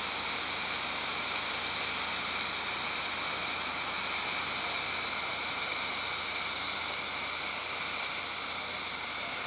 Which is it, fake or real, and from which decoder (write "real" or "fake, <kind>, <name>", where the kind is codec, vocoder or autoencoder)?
real